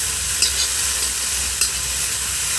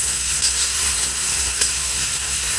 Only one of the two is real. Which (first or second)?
first